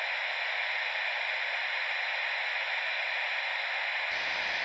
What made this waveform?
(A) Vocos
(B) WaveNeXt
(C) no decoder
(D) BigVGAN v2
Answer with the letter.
C